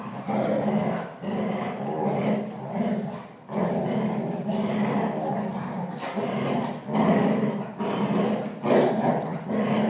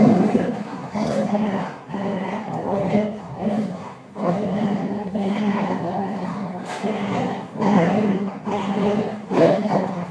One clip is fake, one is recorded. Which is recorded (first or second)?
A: first